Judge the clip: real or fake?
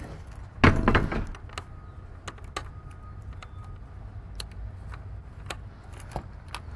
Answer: real